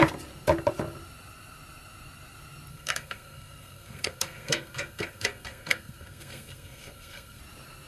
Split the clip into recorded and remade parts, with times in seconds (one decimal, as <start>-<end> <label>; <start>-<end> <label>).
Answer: 0.0-2.7 recorded; 2.7-7.4 remade; 7.4-7.9 recorded